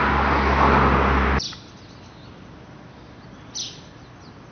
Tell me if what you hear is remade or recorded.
recorded